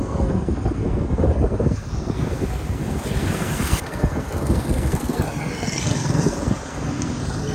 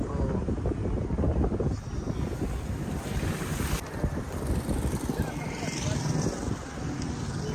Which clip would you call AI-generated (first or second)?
first